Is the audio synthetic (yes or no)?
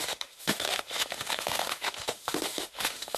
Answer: yes